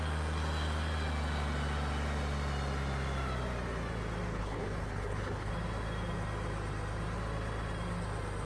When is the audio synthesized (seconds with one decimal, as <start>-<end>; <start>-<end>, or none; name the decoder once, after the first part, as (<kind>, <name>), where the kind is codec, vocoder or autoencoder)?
4.3-5.5 (codec, HILCodec)